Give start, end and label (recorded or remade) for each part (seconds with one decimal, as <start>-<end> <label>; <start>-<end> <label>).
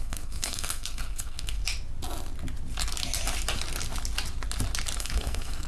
0.0-1.6 remade; 1.6-5.0 recorded; 5.0-5.7 remade